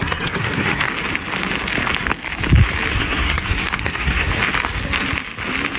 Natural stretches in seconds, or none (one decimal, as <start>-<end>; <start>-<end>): 0.9-2.9; 4.3-5.8